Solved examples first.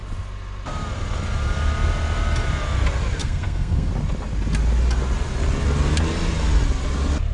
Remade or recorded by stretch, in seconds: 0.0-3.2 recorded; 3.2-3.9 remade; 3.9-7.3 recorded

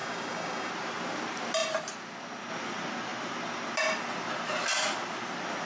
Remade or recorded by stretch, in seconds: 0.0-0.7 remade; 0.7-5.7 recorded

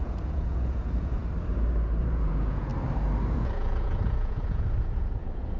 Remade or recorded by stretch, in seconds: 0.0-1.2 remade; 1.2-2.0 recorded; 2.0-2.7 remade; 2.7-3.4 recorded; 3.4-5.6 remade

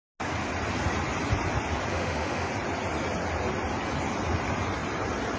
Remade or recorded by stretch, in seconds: 0.0-1.9 recorded; 1.9-2.5 remade; 2.5-5.4 recorded